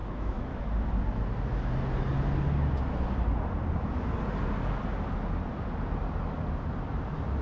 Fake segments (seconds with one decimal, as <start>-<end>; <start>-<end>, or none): 0.0-0.6